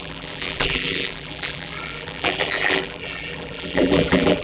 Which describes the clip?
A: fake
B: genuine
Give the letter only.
A